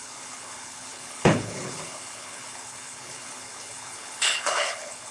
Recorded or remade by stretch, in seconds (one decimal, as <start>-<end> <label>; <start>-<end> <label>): 0.0-5.1 remade